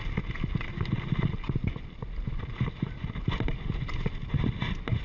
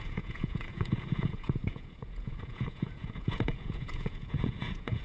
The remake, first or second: second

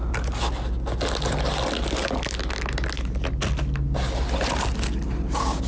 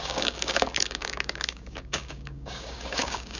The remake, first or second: second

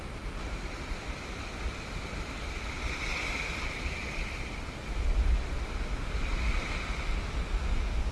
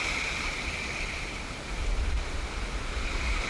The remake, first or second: second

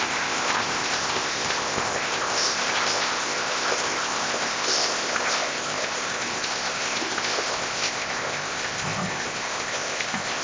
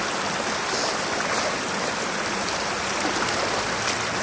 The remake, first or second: first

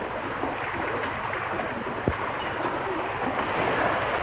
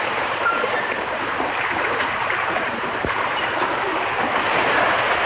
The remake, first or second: second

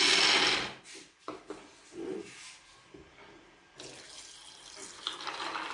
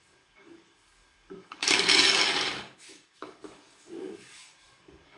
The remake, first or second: second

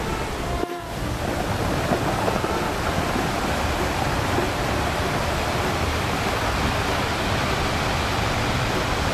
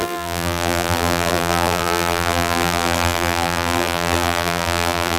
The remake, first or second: second